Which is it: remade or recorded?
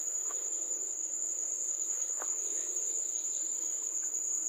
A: remade